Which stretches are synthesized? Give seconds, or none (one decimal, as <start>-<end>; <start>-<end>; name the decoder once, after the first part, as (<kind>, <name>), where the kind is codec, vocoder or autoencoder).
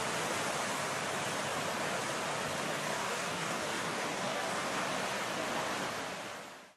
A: 2.8-4.8 (codec, DAC)